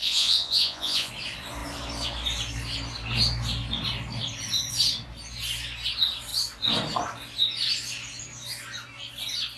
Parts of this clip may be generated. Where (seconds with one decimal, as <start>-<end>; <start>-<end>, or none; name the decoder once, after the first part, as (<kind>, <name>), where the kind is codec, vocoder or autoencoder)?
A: 0.0-1.1 (vocoder, Vocos)